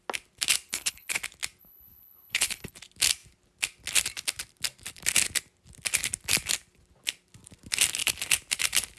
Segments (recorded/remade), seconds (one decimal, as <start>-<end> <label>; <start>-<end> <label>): 0.0-0.7 recorded; 0.7-1.2 remade; 1.2-1.6 recorded; 1.6-2.7 remade; 2.7-9.0 recorded